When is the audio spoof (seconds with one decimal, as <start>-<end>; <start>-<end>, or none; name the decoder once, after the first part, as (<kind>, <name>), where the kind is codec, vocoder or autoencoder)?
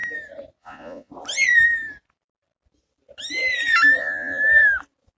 0.6-1.1 (vocoder, Vocos); 4.0-4.4